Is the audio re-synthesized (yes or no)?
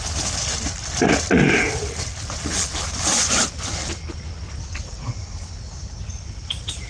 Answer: no